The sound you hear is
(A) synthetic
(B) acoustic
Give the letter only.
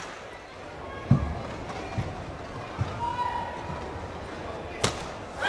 B